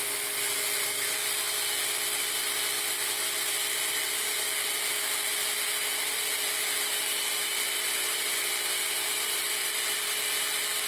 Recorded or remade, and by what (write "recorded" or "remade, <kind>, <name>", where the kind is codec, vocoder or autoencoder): recorded